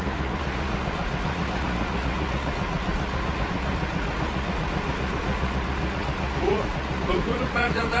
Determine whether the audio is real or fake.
fake